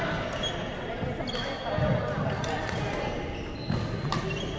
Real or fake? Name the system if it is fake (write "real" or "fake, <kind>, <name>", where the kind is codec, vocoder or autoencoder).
real